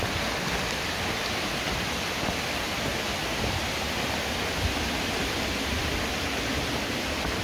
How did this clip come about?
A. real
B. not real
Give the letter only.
A